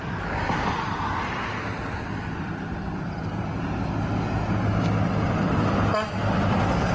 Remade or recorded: recorded